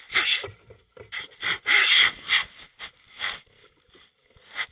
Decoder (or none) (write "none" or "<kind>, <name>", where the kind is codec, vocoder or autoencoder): none